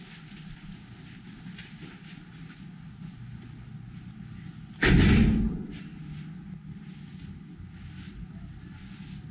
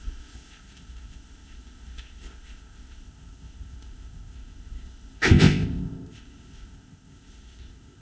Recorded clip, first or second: first